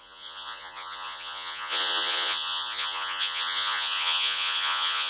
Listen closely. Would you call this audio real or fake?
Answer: fake